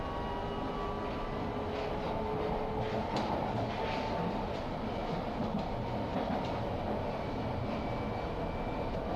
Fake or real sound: real